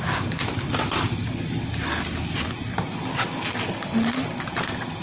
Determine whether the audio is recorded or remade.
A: recorded